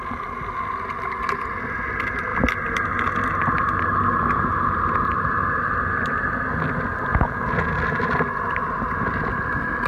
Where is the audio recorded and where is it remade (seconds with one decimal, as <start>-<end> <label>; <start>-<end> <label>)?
0.0-7.1 recorded; 7.1-7.7 remade; 7.7-9.9 recorded